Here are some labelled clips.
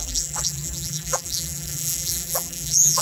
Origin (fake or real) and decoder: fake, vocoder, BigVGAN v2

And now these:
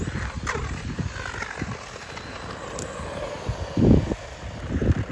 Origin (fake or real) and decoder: real